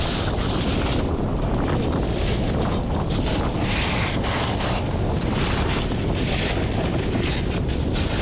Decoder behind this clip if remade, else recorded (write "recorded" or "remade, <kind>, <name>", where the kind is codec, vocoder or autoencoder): recorded